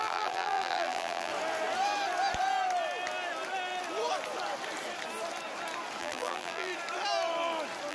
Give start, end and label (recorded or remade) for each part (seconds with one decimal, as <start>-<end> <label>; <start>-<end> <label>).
0.0-1.3 remade; 1.3-6.0 recorded; 6.0-6.7 remade; 6.7-7.9 recorded